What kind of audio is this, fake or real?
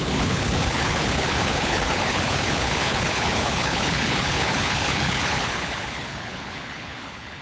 fake